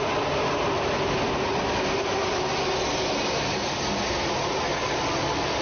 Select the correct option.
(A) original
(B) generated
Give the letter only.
A